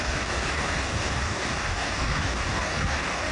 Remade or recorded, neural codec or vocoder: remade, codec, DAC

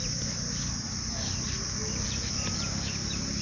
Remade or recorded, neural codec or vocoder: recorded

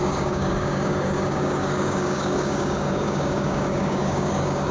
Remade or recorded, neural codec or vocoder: remade, codec, DAC